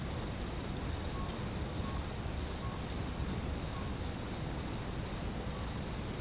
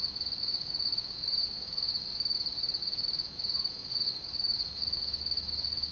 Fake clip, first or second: second